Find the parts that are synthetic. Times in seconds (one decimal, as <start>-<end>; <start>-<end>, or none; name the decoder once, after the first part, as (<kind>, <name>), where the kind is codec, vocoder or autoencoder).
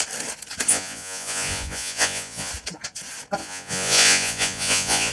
0.7-2.5 (vocoder, Vocos); 3.4-5.1